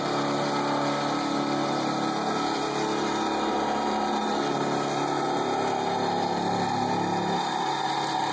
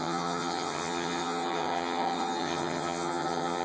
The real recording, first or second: first